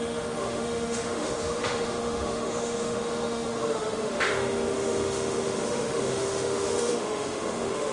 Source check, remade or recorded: remade